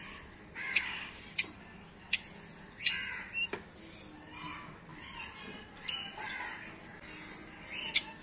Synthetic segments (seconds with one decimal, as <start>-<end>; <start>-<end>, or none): 0.6-1.2